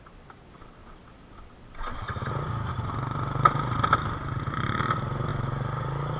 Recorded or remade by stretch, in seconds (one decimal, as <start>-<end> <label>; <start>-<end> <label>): 0.0-0.8 remade; 0.8-2.7 recorded; 2.7-5.3 remade; 5.3-6.2 recorded